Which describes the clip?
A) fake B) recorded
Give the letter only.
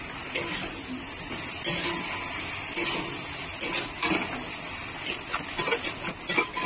B